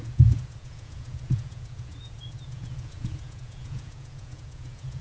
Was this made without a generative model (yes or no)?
no